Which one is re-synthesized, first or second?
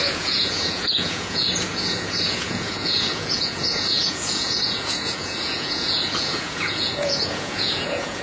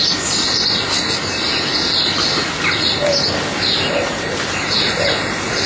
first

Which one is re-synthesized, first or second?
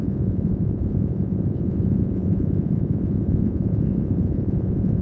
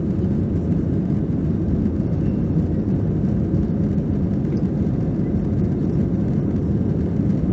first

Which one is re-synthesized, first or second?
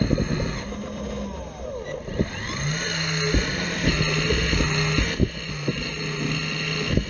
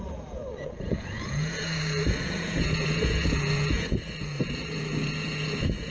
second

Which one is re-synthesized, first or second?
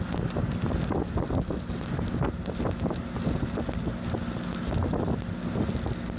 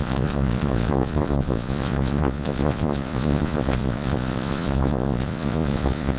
second